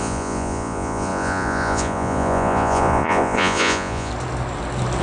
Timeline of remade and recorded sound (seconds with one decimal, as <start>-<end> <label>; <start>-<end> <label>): 0.0-4.1 remade; 4.1-5.0 recorded